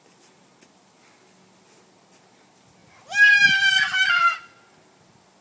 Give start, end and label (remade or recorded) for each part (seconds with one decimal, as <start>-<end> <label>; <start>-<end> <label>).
0.0-5.4 recorded